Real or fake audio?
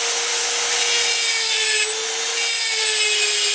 real